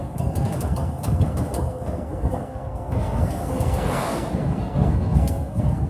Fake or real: fake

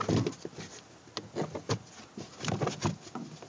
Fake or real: real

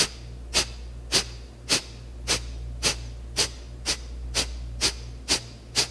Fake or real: real